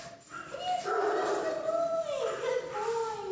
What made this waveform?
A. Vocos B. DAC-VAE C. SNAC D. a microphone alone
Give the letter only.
D